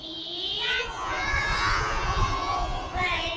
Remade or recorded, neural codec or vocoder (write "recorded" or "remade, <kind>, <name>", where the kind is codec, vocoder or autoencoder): remade, vocoder, Vocos